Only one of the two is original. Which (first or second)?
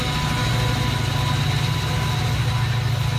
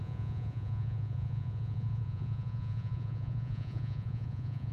first